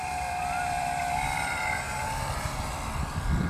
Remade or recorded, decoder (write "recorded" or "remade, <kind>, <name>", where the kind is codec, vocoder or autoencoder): remade, vocoder, BigVGAN v2